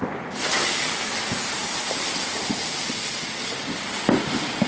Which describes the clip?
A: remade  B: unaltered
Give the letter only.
B